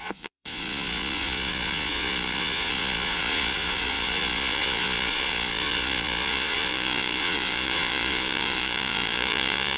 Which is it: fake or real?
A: fake